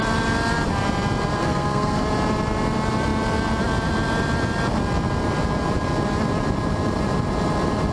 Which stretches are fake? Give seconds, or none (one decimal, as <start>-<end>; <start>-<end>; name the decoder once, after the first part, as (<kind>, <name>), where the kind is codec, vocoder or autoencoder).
1.4-2.0 (codec, SNAC)